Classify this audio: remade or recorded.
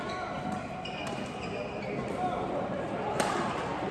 recorded